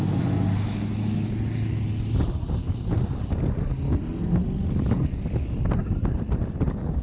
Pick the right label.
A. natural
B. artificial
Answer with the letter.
A